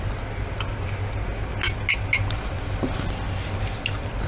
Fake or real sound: real